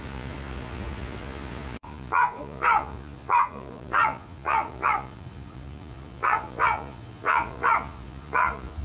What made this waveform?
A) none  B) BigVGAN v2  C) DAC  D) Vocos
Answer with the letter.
D